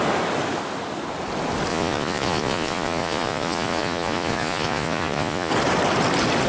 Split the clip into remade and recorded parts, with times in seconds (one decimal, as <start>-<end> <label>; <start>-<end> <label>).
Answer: 0.0-1.7 recorded; 1.7-5.5 remade; 5.5-6.5 recorded

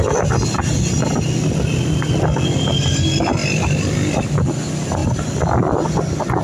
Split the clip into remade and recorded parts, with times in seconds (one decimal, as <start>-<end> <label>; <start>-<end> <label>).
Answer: 0.0-3.4 recorded; 3.4-4.2 remade; 4.2-5.0 recorded; 5.0-6.0 remade; 6.0-6.4 recorded

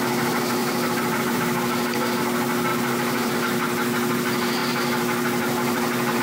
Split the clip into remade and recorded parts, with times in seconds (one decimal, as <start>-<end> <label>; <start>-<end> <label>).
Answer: 0.0-0.6 recorded; 0.6-1.4 remade; 1.4-6.2 recorded

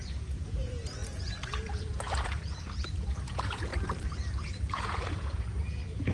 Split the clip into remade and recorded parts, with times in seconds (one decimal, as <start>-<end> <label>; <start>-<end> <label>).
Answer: 0.0-3.7 remade; 3.7-4.6 recorded; 4.6-6.1 remade

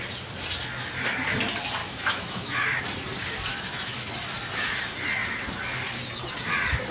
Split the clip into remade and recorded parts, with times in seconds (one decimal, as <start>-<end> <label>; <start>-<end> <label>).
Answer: 0.0-1.8 recorded; 1.8-2.8 remade; 2.8-3.5 recorded; 3.5-4.1 remade; 4.1-6.9 recorded